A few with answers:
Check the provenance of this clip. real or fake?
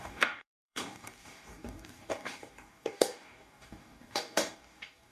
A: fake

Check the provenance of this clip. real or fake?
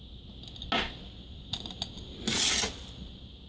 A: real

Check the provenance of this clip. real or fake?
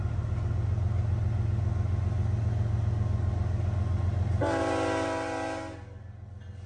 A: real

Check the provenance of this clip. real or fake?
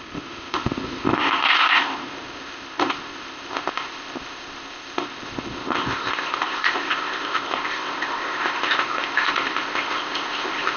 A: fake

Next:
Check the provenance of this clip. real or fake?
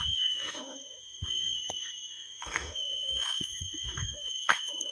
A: fake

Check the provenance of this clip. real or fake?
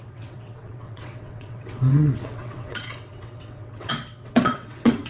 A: fake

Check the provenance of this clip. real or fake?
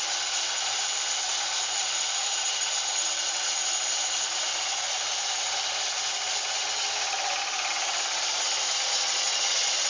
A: real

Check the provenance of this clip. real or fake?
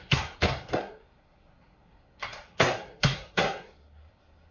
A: fake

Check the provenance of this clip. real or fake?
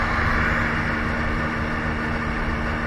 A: real